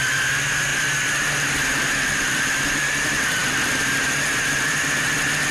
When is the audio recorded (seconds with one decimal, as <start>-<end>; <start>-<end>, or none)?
none